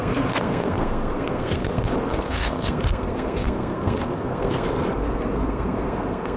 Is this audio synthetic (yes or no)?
yes